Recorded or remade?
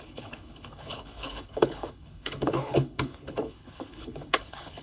remade